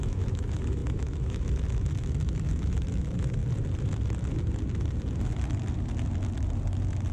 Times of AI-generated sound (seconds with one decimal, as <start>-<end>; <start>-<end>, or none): 0.0-3.4